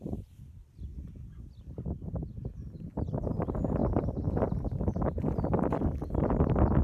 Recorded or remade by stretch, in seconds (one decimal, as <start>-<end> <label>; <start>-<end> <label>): 0.0-6.8 recorded